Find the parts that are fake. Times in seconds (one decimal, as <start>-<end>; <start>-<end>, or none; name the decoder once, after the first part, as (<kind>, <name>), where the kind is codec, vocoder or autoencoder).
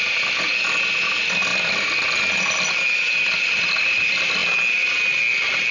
none